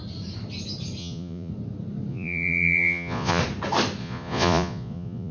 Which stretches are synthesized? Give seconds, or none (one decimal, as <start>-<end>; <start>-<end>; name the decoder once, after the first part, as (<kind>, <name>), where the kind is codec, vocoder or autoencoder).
1.0-1.5 (vocoder, Vocos); 2.1-3.4; 4.0-5.3